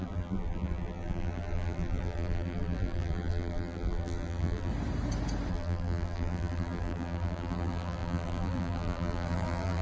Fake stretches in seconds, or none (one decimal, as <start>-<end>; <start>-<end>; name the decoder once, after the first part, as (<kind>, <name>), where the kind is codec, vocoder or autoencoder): 0.0-4.7 (vocoder, BigVGAN v2); 5.5-9.8